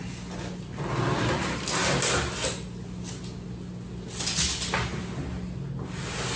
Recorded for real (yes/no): yes